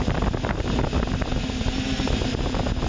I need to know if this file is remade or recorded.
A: recorded